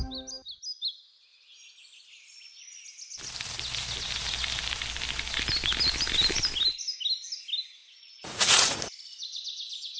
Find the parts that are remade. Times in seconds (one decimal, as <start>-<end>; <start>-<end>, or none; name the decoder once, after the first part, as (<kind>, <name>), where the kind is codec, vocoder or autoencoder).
7.8-8.9 (vocoder, Vocos)